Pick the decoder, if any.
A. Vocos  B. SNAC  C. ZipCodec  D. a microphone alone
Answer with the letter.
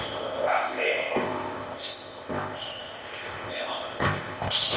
C